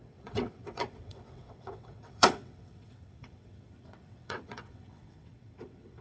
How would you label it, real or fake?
fake